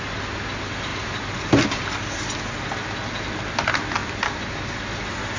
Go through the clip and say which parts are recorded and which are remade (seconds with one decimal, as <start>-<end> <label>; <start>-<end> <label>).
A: 0.0-4.0 recorded; 4.0-4.5 remade; 4.5-5.4 recorded